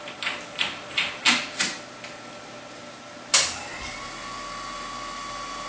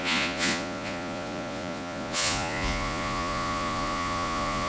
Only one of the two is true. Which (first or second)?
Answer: first